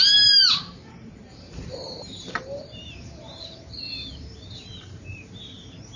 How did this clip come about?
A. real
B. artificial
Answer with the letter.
B